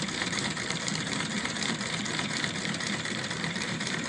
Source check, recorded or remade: remade